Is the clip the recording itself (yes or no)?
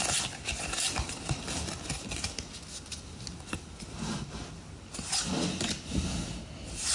yes